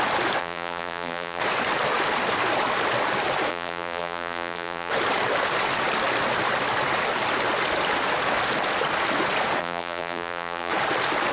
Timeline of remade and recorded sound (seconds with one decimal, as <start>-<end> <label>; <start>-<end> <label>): 0.0-0.4 recorded; 0.4-1.4 remade; 1.4-3.5 recorded; 3.5-4.9 remade; 4.9-9.6 recorded; 9.6-10.7 remade; 10.7-11.3 recorded